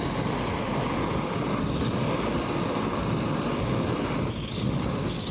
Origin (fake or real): real